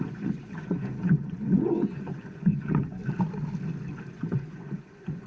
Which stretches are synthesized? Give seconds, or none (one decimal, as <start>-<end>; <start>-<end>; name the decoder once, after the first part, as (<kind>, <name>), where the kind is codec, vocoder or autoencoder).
0.0-3.0 (vocoder, Vocos); 4.1-5.3